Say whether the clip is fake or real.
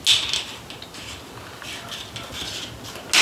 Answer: real